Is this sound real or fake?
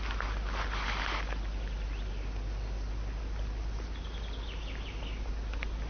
real